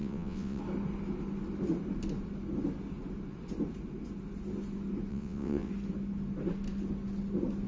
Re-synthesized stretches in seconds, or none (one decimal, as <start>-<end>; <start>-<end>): 0.0-0.6; 5.1-5.7